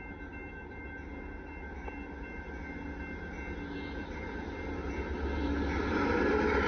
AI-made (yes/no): no